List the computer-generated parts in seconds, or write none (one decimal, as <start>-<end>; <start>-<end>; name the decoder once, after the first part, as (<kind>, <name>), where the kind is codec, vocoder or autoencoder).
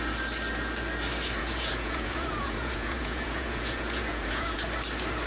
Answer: 1.4-4.6 (vocoder, Vocos)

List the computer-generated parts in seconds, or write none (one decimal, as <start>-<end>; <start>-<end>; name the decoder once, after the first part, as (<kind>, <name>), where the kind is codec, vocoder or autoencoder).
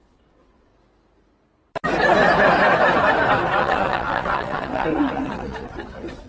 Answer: 0.0-0.7 (vocoder, WaveNeXt); 3.6-6.3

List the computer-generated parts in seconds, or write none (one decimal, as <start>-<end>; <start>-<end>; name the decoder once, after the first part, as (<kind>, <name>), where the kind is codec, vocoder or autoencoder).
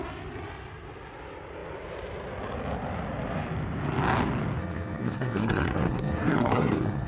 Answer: 4.6-7.1 (codec, SNAC)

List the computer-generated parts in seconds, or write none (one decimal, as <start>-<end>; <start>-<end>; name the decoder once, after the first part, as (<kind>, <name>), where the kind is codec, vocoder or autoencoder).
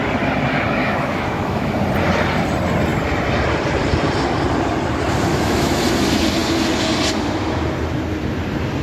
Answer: 0.8-1.8 (autoencoder, DAC-VAE); 5.3-5.8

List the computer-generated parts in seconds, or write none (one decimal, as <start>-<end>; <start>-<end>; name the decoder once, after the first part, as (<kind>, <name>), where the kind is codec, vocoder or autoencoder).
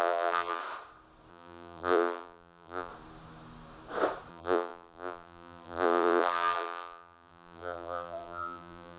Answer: 0.0-0.6 (vocoder, BigVGAN v2); 1.3-2.9; 4.3-9.0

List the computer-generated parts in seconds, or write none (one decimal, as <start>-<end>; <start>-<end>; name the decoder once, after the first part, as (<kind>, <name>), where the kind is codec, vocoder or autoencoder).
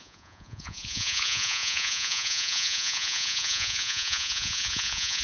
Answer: 0.0-5.2 (vocoder, Vocos)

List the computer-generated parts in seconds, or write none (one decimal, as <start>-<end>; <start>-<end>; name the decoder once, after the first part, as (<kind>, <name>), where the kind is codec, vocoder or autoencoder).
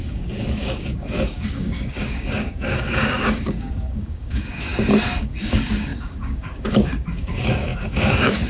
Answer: 0.0-8.5 (codec, DAC)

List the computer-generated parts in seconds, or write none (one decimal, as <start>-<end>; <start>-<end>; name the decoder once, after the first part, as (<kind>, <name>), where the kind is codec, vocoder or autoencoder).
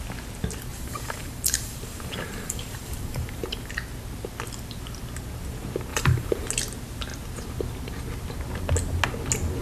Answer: 0.7-3.7 (vocoder, BigVGAN v2); 5.9-6.5